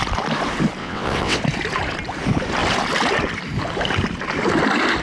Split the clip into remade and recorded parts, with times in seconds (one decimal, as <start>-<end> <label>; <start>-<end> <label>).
0.0-0.8 recorded; 0.8-1.4 remade; 1.4-5.0 recorded